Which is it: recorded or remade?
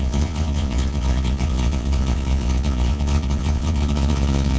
remade